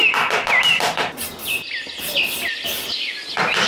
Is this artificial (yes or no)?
no